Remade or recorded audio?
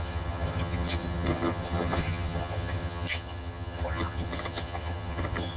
remade